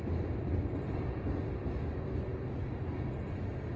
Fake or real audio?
real